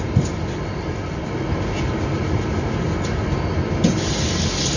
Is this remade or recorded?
recorded